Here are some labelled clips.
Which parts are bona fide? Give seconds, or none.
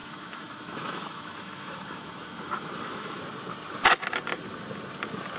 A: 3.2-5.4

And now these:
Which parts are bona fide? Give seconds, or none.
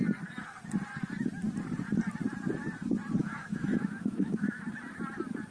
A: 0.0-3.2; 4.6-5.5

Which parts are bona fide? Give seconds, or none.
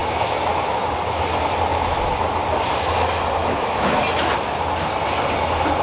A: 0.8-3.4; 4.0-5.8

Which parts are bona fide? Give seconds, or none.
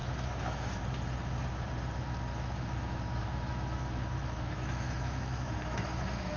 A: 0.8-2.3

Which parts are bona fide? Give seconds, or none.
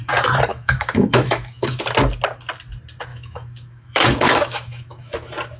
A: 0.0-0.5; 1.8-3.1; 5.1-5.6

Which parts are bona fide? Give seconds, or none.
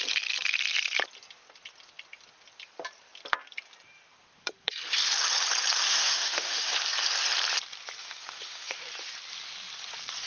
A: 0.0-5.8; 6.7-8.0; 8.8-10.3